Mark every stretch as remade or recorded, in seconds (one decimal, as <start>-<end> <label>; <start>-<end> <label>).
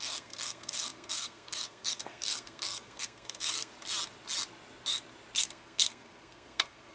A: 0.0-3.7 remade; 3.7-5.4 recorded; 5.4-6.9 remade